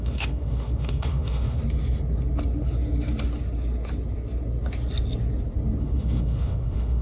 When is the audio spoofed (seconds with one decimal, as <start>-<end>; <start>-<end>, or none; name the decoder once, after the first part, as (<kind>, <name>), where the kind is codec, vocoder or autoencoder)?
0.0-1.6 (autoencoder, DAC-VAE); 5.8-7.0